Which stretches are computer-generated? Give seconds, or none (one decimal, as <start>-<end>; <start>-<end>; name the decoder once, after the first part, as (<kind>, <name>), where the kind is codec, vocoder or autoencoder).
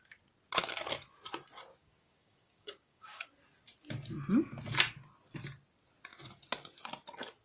1.8-3.3 (codec, DAC)